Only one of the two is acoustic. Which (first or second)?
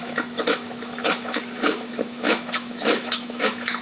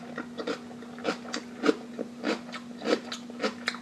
second